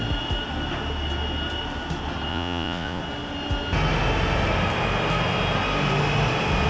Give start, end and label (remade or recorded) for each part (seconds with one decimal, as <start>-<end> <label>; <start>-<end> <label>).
0.0-2.3 recorded; 2.3-3.0 remade; 3.0-6.7 recorded